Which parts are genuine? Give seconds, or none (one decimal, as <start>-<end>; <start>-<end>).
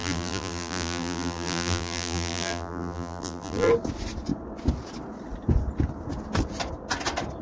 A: 3.7-7.4